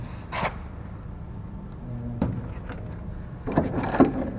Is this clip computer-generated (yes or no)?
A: no